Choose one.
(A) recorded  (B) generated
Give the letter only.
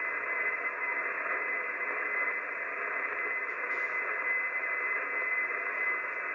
A